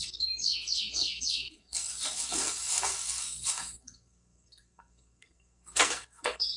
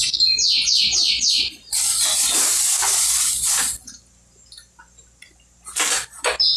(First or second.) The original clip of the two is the second